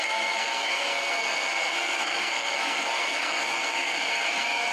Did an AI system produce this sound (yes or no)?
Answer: yes